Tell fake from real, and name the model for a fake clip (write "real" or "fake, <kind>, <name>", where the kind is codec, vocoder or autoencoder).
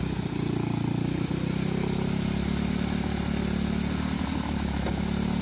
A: real